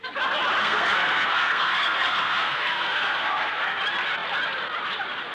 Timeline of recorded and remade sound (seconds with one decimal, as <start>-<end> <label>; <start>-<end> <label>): 0.0-0.6 recorded; 0.6-3.8 remade; 3.8-5.3 recorded

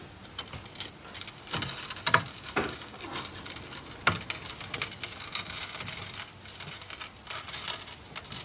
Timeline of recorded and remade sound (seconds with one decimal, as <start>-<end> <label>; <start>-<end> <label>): 0.0-2.3 recorded; 2.3-3.0 remade; 3.0-8.4 recorded

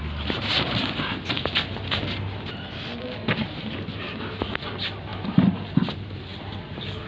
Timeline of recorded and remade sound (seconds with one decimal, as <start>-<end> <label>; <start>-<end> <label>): 0.0-7.1 recorded